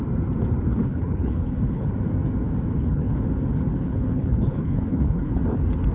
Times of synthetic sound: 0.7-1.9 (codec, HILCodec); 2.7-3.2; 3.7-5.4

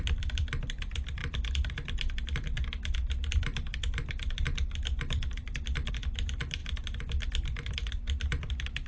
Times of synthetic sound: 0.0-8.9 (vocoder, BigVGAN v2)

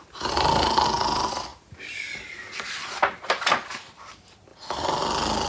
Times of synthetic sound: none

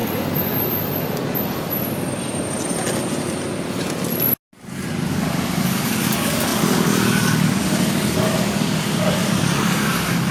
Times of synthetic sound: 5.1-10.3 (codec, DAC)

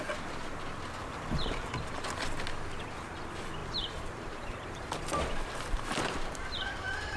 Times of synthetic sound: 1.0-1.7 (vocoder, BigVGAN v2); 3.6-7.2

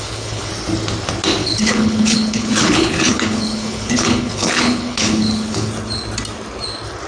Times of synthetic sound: 0.0-0.5 (codec, HILCodec); 1.4-5.7

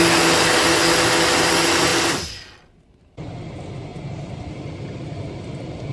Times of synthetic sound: none